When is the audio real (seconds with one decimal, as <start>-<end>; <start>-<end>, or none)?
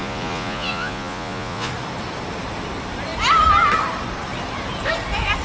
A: 1.7-5.4